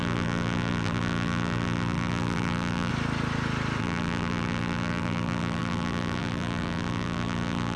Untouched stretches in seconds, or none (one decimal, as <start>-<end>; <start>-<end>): 2.9-3.8